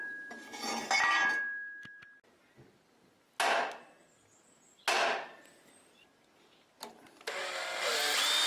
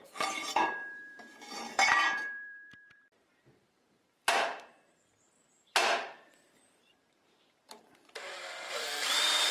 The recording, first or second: first